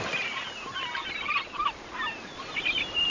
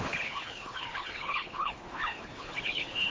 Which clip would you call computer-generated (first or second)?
second